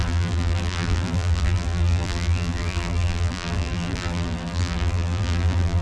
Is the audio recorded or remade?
remade